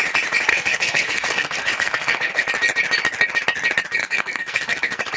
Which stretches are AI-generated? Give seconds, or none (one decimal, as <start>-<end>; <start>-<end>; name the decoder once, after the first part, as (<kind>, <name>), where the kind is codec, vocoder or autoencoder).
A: 0.5-2.4 (codec, SNAC); 4.0-5.2